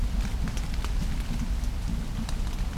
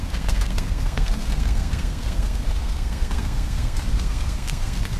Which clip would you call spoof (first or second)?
second